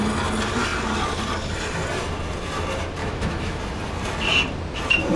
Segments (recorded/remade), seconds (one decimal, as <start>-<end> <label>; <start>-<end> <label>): 0.0-3.0 recorded; 3.0-3.6 remade; 3.6-5.2 recorded